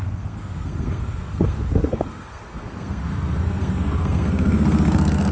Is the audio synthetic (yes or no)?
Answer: yes